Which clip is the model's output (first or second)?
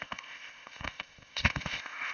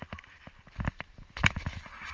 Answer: first